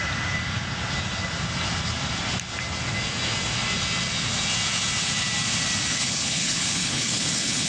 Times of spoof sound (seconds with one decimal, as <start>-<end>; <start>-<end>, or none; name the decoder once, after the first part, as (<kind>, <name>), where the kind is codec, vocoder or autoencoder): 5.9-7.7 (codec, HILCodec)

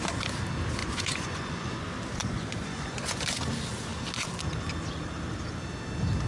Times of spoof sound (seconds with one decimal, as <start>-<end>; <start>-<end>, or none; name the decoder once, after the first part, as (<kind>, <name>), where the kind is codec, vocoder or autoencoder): 0.8-1.7 (vocoder, Vocos); 2.2-3.2

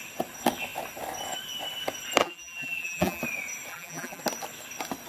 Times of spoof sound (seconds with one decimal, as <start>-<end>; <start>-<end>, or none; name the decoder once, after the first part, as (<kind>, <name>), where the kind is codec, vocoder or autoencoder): 2.2-3.2 (vocoder, BigVGAN v2); 3.7-4.2

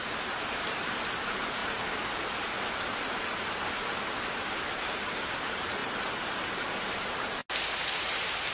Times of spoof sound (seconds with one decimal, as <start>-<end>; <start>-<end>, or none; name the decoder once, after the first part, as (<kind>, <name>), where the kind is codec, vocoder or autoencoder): 0.0-1.6 (vocoder, BigVGAN v2); 5.1-7.4; 8.0-8.5

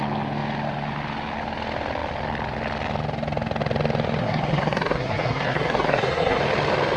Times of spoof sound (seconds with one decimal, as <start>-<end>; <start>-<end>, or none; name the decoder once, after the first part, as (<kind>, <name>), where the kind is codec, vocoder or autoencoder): 4.2-6.4 (codec, SNAC)